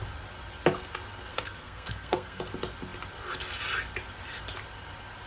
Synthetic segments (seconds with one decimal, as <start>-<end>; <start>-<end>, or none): 1.3-2.4